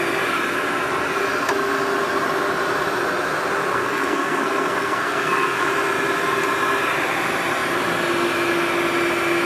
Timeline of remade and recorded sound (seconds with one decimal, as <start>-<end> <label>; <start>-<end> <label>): 0.0-3.7 recorded; 3.7-5.7 remade; 5.7-9.5 recorded